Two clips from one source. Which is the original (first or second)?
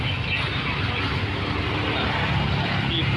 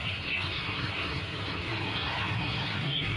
first